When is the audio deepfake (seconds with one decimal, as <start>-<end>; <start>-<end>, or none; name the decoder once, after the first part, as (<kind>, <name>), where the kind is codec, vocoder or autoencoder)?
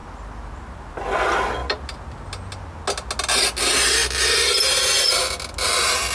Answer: none